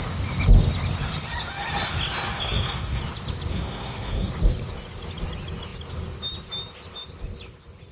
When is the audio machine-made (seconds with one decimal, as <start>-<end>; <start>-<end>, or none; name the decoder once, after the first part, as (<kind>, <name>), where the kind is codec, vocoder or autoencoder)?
2.4-3.0 (codec, SNAC); 3.5-4.3